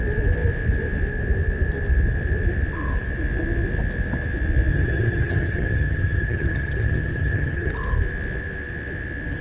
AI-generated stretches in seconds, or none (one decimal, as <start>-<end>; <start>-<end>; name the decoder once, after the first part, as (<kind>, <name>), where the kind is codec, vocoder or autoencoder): 4.7-7.7 (vocoder, HiFi-GAN)